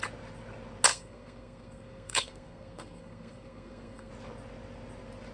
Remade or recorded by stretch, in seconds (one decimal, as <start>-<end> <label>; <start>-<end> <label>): 0.0-0.9 recorded; 0.9-4.1 remade; 4.1-5.3 recorded